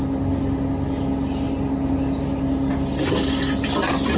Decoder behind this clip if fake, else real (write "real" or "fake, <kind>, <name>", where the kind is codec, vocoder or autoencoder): real